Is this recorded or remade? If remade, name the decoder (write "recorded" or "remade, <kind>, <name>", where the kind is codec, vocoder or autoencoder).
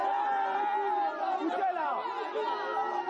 recorded